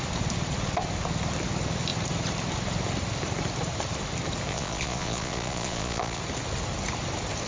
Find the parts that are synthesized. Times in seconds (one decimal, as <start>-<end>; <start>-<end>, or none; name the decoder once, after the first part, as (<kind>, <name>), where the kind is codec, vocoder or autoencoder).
4.5-6.2 (vocoder, Vocos)